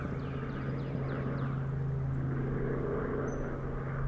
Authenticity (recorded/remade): recorded